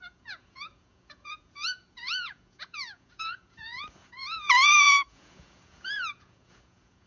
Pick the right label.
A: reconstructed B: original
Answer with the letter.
A